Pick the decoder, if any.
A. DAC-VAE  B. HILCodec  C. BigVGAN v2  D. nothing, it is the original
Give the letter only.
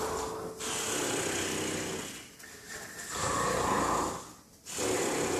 D